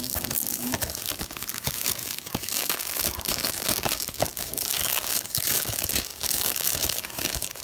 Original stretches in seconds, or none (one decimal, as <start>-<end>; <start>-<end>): none